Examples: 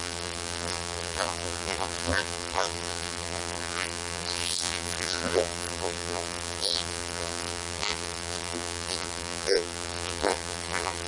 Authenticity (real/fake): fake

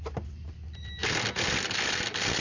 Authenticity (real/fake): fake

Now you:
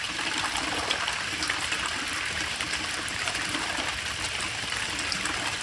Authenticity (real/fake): fake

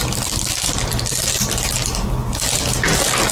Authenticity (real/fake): real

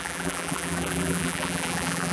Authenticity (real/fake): fake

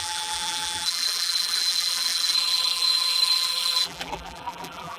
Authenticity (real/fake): fake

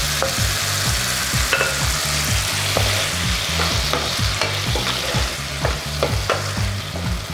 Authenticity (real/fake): real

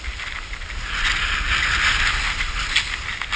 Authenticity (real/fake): real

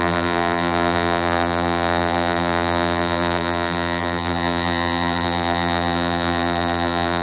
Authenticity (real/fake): fake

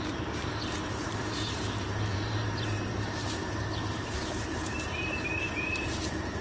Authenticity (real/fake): fake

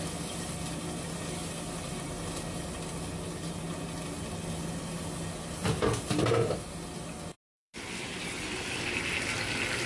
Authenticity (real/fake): real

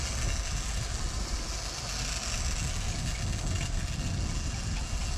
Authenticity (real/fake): real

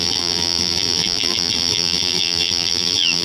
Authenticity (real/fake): fake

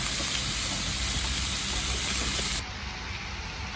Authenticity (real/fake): real